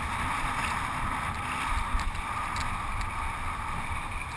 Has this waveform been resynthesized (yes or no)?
no